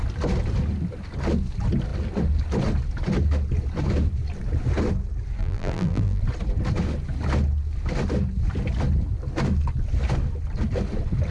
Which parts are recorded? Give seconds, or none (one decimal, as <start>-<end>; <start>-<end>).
0.0-5.4; 6.2-11.3